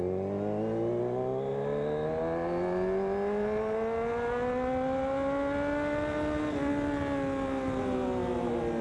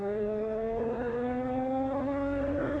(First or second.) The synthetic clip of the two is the second